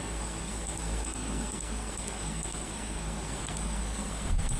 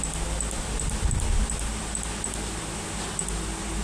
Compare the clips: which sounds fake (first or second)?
first